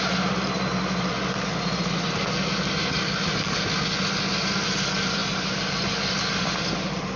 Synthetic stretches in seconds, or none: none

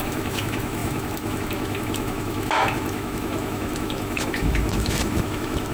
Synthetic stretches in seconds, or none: 0.0-5.7 (autoencoder, DAC-VAE)

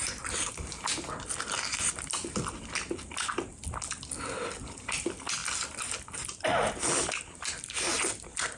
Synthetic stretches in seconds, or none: none

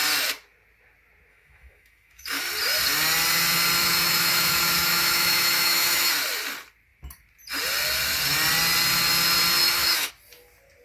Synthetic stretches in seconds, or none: 1.3-2.4 (autoencoder, DAC-VAE); 3.8-6.1; 9.6-10.1

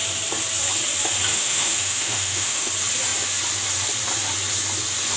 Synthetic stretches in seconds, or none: 1.3-2.7 (autoencoder, DAC-VAE)

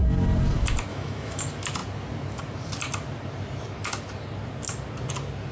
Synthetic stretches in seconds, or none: 0.9-1.4 (autoencoder, DAC-VAE)

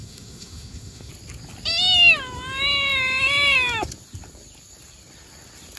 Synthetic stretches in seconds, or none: 0.0-1.1 (autoencoder, DAC-VAE)